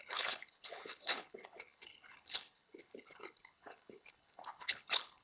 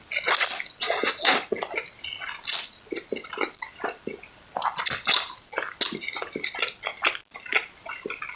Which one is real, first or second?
second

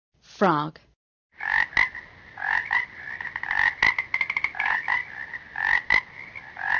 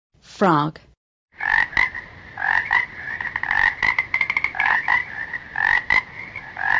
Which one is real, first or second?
first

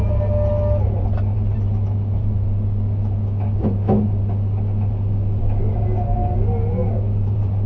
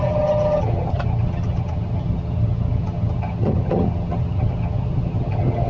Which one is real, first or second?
first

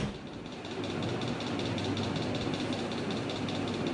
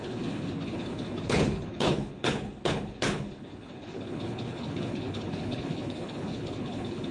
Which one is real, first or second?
first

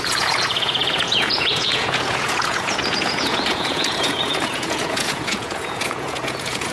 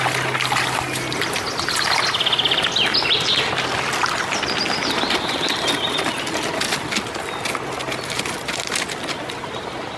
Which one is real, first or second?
second